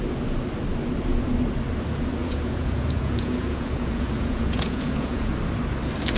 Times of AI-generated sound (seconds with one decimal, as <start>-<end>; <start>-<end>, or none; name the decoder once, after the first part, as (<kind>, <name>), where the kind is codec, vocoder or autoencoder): 2.2-5.3 (vocoder, Vocos)